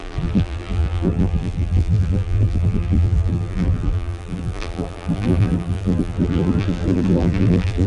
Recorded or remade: remade